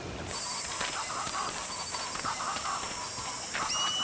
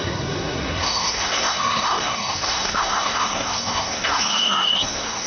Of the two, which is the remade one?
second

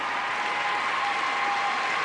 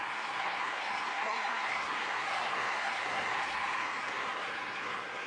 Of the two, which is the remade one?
second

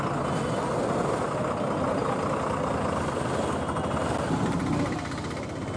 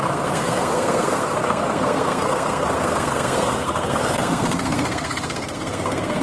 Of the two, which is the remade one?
second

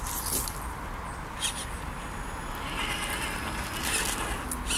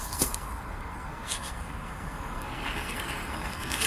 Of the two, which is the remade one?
second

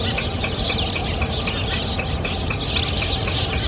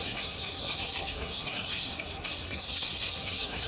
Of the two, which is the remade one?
second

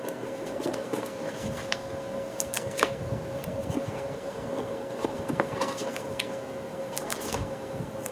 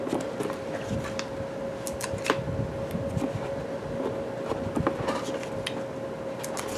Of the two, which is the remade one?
first